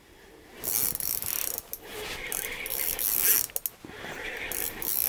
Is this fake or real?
real